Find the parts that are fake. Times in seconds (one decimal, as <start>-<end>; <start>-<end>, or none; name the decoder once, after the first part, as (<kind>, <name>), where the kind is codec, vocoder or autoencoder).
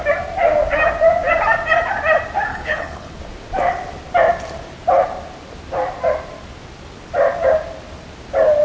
2.5-3.2 (codec, HILCodec)